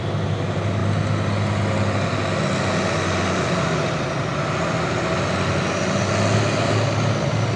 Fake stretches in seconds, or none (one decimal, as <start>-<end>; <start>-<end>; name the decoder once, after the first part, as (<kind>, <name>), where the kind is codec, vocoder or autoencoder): none